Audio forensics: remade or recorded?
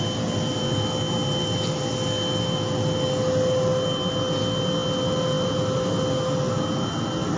recorded